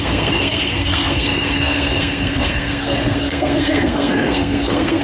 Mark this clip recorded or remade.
remade